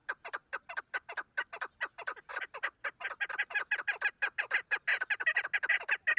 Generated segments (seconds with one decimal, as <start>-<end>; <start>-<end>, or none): none